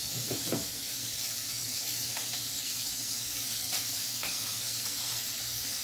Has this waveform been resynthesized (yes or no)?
yes